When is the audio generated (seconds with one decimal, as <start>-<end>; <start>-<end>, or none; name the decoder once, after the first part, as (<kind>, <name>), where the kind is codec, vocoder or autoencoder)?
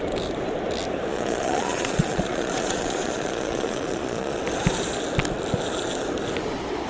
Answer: 1.1-4.4 (vocoder, Vocos)